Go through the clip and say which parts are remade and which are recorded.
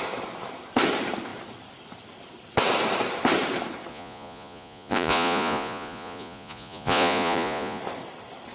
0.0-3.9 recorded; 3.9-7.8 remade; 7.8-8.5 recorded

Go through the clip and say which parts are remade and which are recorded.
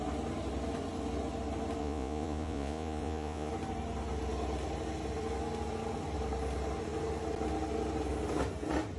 0.0-1.8 recorded; 1.8-3.5 remade; 3.5-9.0 recorded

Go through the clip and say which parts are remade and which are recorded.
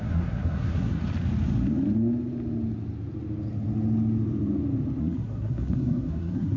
0.0-1.0 remade; 1.0-5.0 recorded; 5.0-6.6 remade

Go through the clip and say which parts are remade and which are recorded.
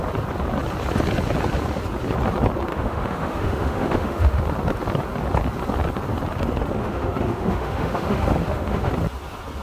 0.0-2.7 recorded; 2.7-4.4 remade; 4.4-6.8 recorded; 6.8-8.9 remade; 8.9-9.6 recorded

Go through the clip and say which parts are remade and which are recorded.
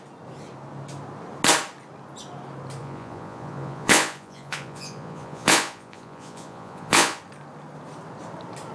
0.0-2.8 recorded; 2.8-7.2 remade; 7.2-8.7 recorded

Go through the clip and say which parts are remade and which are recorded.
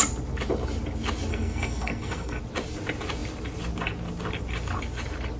0.0-1.3 recorded; 1.3-2.4 remade; 2.4-5.4 recorded